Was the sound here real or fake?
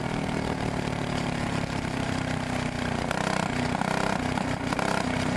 real